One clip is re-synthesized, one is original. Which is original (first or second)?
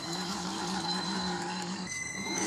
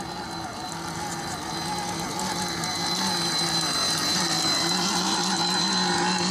second